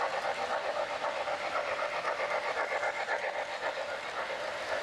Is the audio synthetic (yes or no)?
no